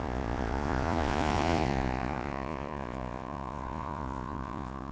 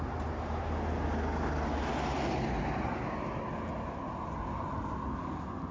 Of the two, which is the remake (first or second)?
first